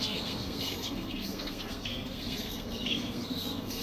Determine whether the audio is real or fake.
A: fake